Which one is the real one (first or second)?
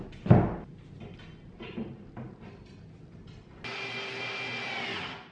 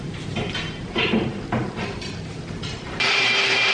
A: first